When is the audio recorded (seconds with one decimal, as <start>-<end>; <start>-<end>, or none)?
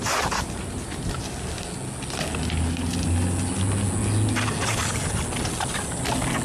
0.0-6.4